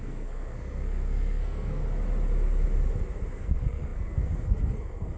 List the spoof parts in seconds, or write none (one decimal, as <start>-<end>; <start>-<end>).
0.0-1.8; 3.3-5.2